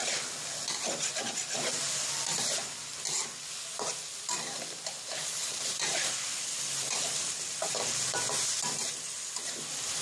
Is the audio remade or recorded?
recorded